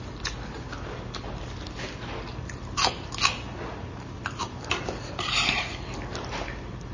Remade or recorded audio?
remade